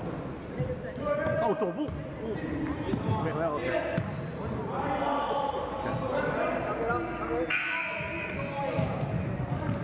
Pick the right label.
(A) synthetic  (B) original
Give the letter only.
B